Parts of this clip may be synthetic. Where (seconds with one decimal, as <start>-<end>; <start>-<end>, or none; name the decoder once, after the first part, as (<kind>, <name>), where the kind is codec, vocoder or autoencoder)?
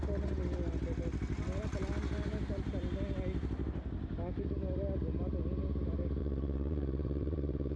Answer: 6.2-7.8 (vocoder, WaveNeXt)